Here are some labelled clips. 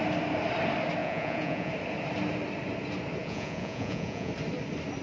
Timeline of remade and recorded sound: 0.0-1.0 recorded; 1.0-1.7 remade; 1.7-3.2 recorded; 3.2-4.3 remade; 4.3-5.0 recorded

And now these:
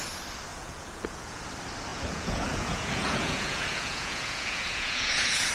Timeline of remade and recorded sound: 0.0-0.5 recorded; 0.5-1.4 remade; 1.4-1.9 recorded; 1.9-5.5 remade

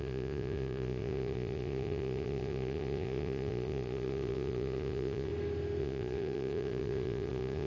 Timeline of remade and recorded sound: 0.0-5.3 remade; 5.3-5.8 recorded; 5.8-7.7 remade

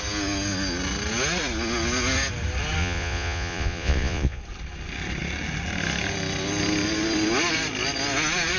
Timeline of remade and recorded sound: 0.0-2.8 recorded; 2.8-4.4 remade; 4.4-8.6 recorded